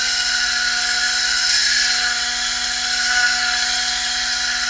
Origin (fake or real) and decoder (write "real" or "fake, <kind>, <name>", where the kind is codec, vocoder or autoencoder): real